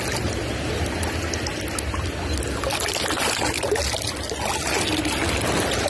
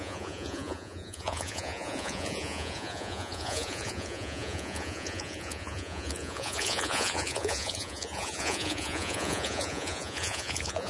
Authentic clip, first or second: first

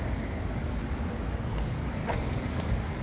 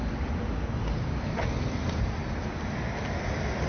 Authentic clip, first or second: second